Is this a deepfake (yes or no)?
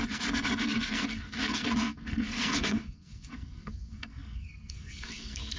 yes